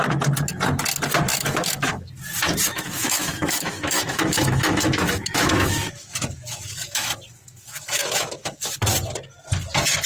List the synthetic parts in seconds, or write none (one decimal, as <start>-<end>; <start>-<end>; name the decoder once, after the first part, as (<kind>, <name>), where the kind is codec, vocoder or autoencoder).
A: 1.3-2.1 (autoencoder, DAC-VAE); 2.7-7.1; 7.5-8.8